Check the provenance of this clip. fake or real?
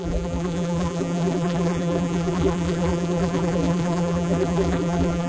fake